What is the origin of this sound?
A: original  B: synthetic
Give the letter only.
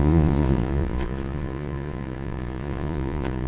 B